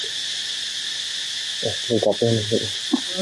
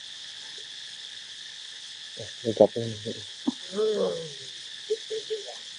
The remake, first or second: second